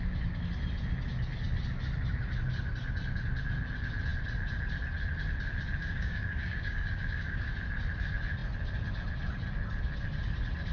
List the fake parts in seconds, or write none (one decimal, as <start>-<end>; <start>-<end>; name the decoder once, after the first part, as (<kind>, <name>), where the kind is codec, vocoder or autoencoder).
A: 5.8-7.5 (codec, DAC)